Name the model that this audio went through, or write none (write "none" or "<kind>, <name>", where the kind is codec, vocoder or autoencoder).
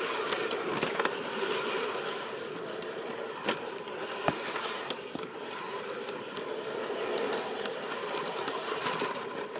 none